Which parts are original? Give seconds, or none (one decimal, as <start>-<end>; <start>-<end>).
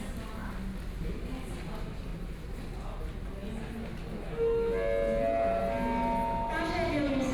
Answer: 0.0-2.1; 3.0-7.3